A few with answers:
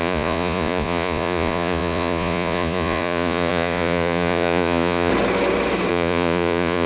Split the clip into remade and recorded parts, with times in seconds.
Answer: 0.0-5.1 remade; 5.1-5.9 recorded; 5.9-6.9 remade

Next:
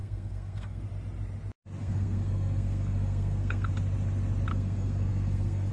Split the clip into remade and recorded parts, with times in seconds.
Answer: 0.0-0.8 remade; 0.8-1.8 recorded; 1.8-3.7 remade; 3.7-4.5 recorded; 4.5-5.7 remade

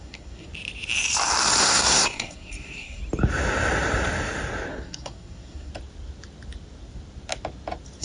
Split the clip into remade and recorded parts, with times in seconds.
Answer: 0.0-0.5 remade; 0.5-1.6 recorded; 1.6-3.0 remade; 3.0-4.7 recorded; 4.7-5.7 remade; 5.7-8.0 recorded